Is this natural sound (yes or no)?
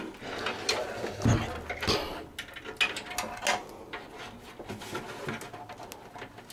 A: yes